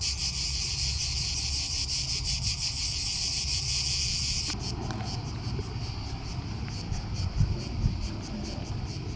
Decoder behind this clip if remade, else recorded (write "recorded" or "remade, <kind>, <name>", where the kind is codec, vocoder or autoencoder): recorded